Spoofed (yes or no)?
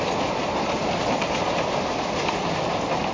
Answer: yes